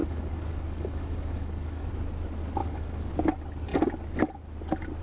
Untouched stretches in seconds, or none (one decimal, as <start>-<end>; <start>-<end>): 1.9-2.6; 3.1-5.0